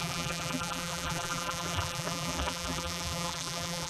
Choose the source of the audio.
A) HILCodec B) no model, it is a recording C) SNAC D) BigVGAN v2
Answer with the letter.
D